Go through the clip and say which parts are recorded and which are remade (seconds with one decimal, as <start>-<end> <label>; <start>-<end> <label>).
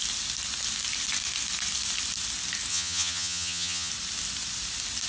0.0-2.7 recorded; 2.7-3.9 remade; 3.9-5.1 recorded